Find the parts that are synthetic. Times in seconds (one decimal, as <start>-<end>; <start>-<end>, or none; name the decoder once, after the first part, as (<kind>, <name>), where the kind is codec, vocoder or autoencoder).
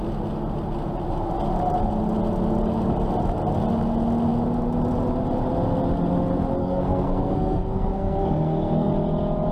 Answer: 6.6-8.9 (codec, SNAC)